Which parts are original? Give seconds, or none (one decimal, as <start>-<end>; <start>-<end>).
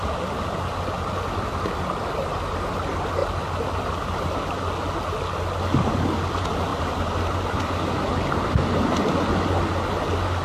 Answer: 0.0-6.7; 7.6-10.4